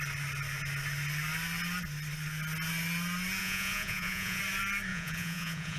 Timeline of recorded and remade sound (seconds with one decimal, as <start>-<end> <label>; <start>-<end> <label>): 0.0-3.4 recorded; 3.4-4.4 remade; 4.4-4.9 recorded; 4.9-5.8 remade